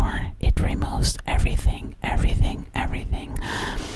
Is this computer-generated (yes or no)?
no